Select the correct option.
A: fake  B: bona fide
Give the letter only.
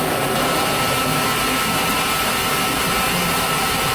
B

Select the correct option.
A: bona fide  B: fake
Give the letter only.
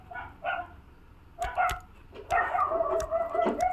A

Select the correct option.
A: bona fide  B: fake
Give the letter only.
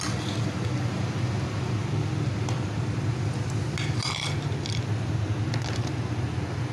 A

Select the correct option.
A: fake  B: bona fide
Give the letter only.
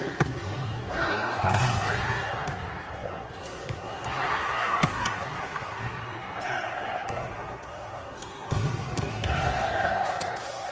A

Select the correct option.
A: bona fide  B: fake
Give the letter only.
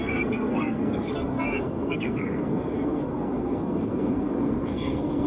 B